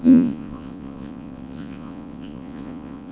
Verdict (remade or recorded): remade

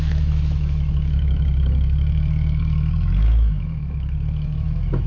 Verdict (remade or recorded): remade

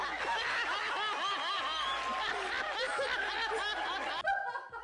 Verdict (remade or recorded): recorded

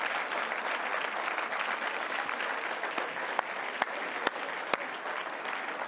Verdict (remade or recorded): recorded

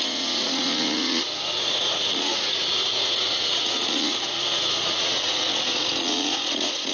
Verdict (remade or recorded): remade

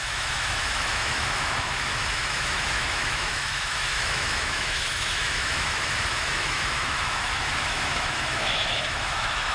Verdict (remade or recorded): remade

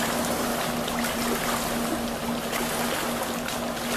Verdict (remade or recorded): recorded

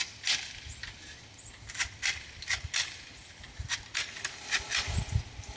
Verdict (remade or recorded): recorded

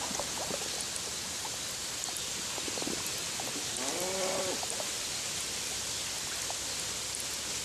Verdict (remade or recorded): recorded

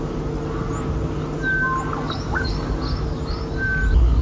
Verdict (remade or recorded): recorded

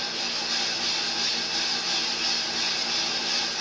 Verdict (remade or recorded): recorded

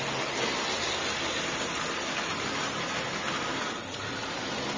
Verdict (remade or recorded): recorded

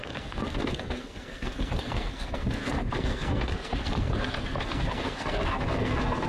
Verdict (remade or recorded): remade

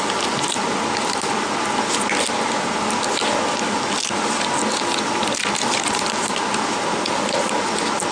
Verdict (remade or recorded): recorded